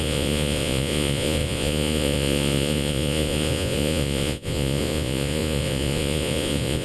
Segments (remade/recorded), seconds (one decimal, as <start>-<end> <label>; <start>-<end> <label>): 0.0-6.8 remade